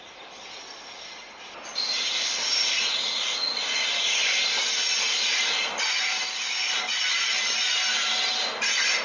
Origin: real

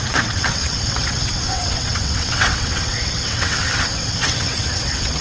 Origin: fake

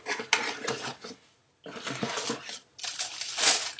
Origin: real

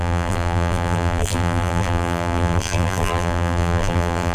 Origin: fake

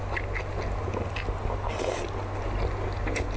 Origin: real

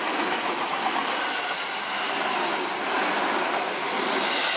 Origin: real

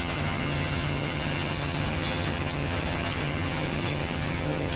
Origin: fake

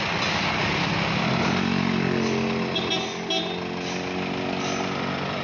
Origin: real